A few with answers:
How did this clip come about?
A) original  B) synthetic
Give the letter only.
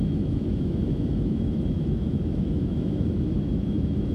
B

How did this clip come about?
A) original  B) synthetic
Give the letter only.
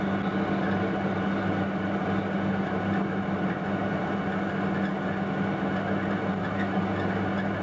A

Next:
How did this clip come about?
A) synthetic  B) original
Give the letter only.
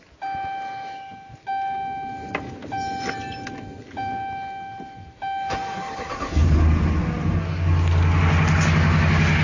B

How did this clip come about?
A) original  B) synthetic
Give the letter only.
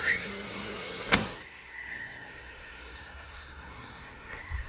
B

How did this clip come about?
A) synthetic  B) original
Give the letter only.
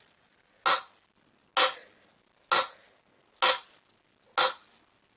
B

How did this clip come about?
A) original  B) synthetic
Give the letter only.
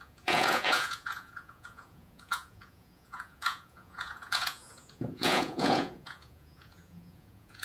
B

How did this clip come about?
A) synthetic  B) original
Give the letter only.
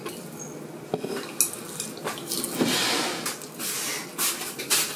B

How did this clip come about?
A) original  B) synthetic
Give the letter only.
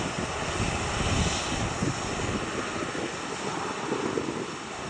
A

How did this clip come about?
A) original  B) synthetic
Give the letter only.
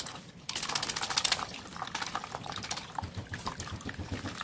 A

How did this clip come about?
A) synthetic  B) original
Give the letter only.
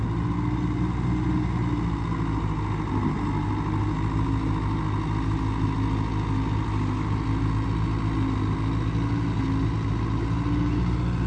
B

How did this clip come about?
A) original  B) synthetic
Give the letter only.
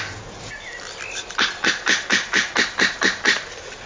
A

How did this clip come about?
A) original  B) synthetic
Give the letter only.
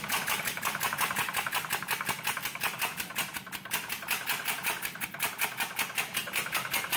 A